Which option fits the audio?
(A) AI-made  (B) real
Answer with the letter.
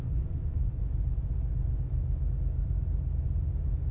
B